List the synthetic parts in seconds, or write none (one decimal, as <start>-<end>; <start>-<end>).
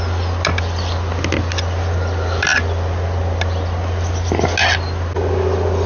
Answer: none